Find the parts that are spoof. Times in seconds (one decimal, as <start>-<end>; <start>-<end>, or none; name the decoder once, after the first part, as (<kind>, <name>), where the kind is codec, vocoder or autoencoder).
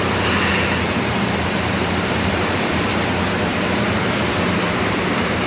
0.0-2.9 (vocoder, BigVGAN v2); 4.4-5.5